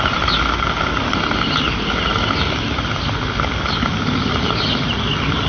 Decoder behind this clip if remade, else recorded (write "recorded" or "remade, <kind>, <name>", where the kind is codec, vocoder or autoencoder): recorded